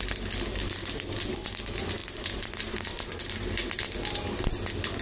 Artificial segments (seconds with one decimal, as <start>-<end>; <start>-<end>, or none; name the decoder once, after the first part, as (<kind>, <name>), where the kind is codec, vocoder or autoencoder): none